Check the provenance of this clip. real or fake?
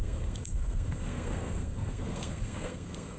fake